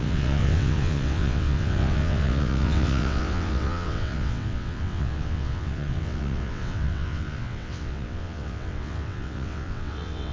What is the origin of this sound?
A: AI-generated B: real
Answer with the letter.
A